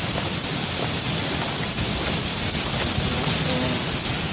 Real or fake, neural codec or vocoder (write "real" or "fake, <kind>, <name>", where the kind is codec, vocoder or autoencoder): real